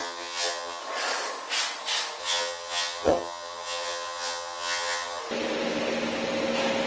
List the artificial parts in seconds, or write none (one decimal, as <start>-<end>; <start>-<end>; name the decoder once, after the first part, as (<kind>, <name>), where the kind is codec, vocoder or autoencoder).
0.0-0.8 (vocoder, HiFi-GAN); 2.2-5.2